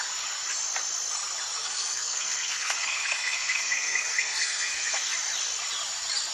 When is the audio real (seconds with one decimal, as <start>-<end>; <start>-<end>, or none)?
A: 0.0-1.6; 5.1-6.3